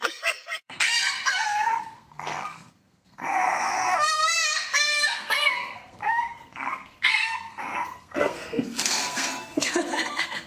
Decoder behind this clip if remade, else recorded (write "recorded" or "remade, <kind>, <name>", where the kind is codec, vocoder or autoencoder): remade, codec, SNAC